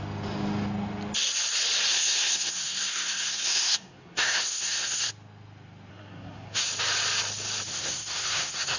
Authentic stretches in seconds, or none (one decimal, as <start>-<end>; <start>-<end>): 0.0-1.9; 5.1-5.9; 6.6-7.7

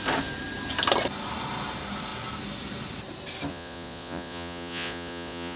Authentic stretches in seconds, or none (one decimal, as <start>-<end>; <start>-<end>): 0.0-3.5